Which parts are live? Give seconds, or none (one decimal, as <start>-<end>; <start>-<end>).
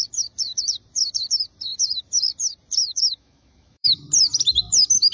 0.0-2.8; 4.0-5.1